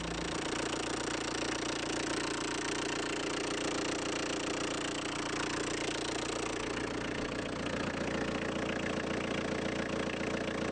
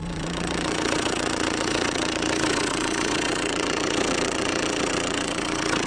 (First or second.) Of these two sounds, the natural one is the first